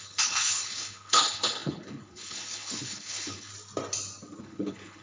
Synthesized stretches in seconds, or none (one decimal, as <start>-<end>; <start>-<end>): 0.0-3.5; 4.4-5.0